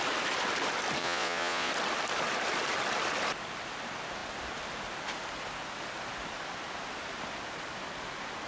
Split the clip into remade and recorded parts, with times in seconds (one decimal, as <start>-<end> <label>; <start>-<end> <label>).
0.0-1.0 recorded; 1.0-1.7 remade; 1.7-8.5 recorded